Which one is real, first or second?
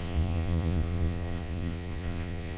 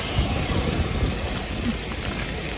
second